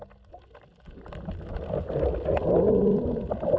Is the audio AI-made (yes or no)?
no